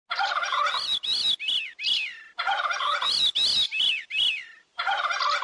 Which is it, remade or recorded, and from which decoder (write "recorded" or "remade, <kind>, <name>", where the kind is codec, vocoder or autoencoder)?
recorded